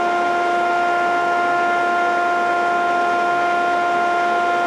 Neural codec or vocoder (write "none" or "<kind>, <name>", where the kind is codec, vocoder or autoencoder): none